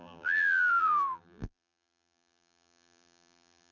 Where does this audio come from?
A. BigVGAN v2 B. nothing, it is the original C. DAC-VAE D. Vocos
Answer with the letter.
A